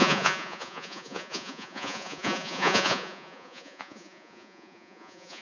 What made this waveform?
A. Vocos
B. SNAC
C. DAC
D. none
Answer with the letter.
A